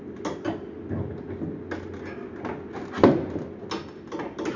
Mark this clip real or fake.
real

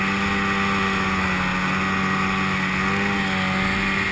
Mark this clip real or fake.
real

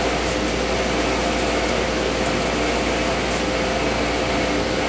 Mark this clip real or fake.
real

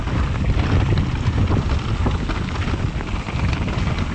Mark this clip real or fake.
real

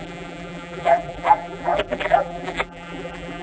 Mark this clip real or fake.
fake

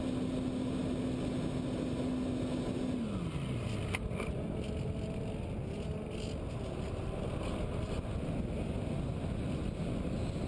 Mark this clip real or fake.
real